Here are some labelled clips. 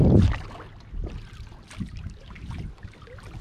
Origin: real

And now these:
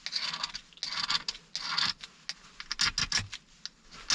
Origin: real